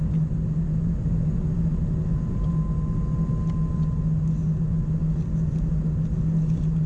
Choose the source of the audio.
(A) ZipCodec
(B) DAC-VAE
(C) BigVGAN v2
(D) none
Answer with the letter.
D